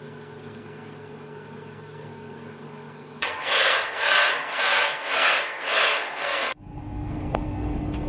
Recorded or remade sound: remade